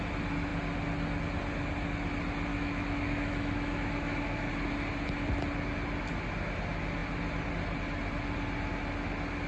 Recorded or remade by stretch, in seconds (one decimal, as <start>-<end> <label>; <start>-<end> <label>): 0.0-2.5 recorded; 2.5-4.5 remade; 4.5-9.5 recorded